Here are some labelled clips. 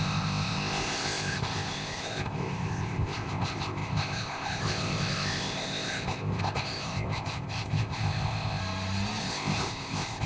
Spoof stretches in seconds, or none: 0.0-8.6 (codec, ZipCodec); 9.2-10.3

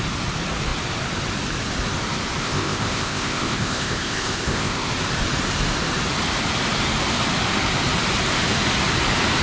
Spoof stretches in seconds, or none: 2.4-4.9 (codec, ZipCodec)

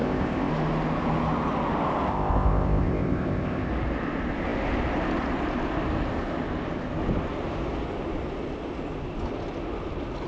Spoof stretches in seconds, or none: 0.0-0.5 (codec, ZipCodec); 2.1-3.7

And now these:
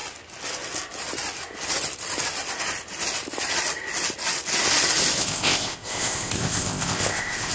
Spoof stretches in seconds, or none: 5.2-7.5 (codec, ZipCodec)

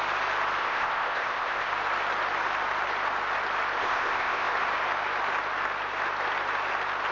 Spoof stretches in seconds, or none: 0.6-1.7 (codec, ZipCodec); 3.8-4.5

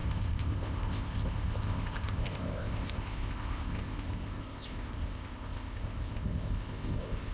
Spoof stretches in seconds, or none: 0.0-7.3 (codec, ZipCodec)